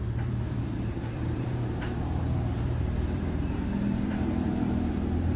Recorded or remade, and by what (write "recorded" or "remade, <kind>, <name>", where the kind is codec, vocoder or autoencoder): remade, vocoder, BigVGAN v2